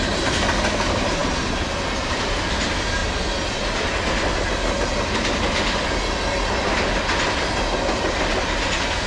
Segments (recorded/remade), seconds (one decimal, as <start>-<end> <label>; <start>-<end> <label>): 0.0-9.1 recorded

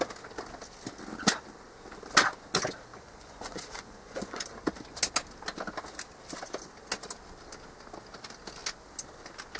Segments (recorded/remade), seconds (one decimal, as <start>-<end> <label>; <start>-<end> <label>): 0.0-2.9 recorded; 2.9-4.4 remade; 4.4-9.6 recorded

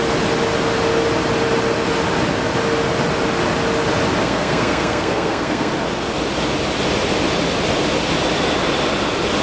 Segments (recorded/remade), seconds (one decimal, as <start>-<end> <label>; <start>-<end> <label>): 0.0-4.2 recorded; 4.2-5.7 remade; 5.7-9.4 recorded